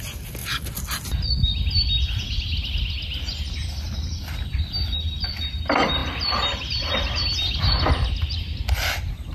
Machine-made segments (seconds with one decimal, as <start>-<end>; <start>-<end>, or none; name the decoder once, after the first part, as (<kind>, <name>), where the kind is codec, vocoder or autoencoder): 0.4-1.9 (vocoder, BigVGAN v2); 3.6-4.2